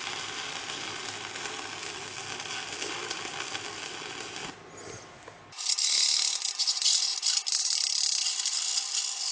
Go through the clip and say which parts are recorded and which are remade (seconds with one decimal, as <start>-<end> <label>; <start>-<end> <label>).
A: 0.0-9.3 recorded